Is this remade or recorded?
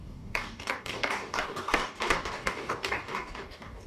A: remade